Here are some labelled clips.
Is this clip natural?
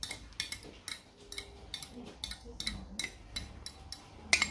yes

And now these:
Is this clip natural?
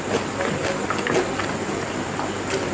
yes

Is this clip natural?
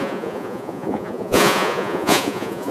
no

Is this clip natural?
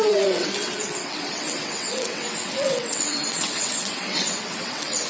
no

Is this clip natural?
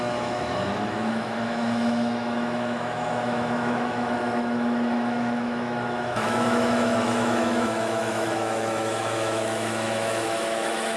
no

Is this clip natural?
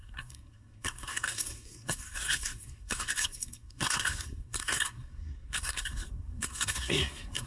no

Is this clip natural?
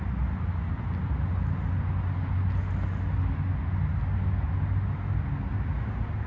yes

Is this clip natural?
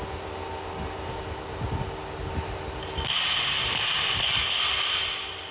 yes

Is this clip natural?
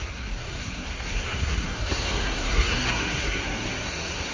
no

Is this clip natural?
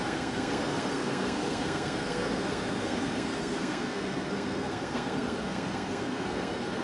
no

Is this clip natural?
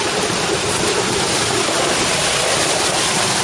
yes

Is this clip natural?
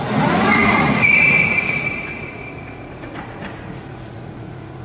no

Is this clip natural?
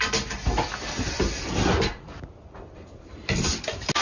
yes